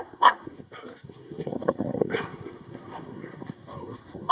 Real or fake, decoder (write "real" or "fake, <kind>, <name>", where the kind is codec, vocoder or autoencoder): fake, codec, SNAC